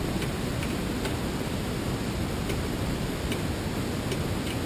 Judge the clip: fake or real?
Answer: fake